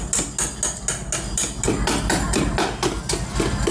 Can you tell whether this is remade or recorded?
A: recorded